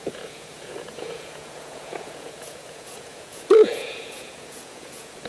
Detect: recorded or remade remade